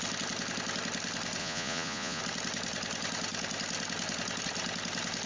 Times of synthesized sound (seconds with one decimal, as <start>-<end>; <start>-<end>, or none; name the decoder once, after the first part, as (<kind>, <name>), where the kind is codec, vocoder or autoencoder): 1.4-2.2 (vocoder, Vocos)